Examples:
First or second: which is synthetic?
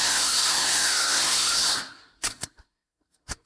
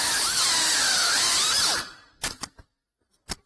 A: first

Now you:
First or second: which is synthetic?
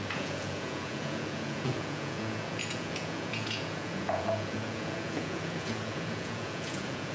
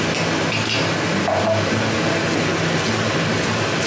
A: first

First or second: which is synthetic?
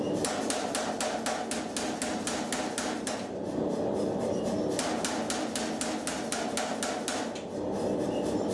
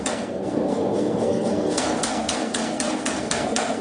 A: second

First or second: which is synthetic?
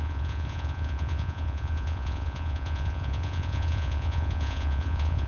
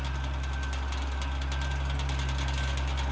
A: first